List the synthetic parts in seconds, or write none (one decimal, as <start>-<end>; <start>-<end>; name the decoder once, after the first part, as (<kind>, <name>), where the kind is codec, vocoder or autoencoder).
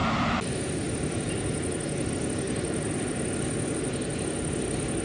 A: none